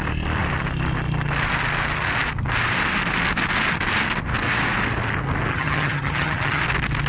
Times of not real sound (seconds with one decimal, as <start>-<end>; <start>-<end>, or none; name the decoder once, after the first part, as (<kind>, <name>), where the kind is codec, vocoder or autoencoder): 5.5-6.6 (vocoder, HiFi-GAN)